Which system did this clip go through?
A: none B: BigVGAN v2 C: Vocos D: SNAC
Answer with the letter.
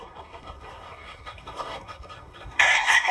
D